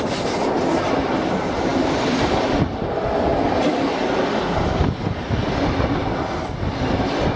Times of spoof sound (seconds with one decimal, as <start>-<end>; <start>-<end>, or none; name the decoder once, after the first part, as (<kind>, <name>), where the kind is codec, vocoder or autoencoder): none